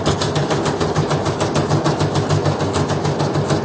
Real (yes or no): yes